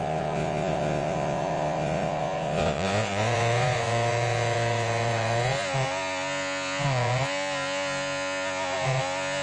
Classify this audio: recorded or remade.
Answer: remade